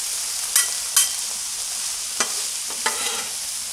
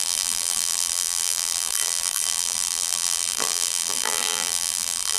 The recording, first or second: first